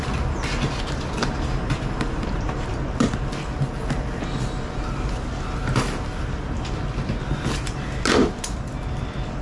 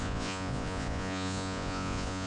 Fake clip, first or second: second